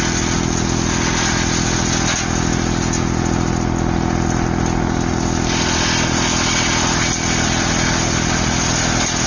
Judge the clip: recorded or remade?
recorded